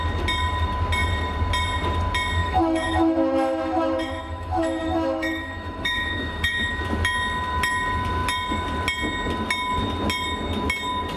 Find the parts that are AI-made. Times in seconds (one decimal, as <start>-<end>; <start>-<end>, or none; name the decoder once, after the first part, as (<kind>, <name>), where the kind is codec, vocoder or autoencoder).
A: 2.4-6.8 (autoencoder, DAC-VAE)